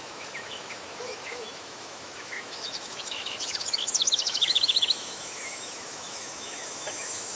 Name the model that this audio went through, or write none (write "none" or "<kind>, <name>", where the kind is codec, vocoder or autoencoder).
autoencoder, DAC-VAE